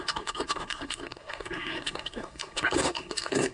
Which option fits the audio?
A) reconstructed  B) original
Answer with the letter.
A